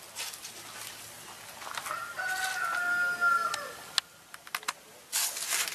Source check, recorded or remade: recorded